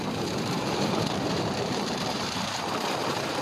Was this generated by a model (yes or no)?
yes